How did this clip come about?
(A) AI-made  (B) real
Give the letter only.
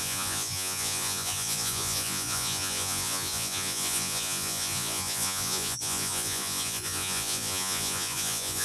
A